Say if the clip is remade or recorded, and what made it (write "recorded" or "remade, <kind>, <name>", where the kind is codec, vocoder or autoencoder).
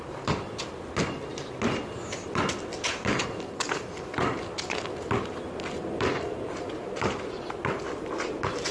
recorded